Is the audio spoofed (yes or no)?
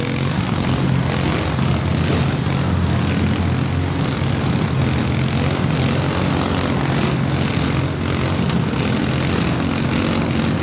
no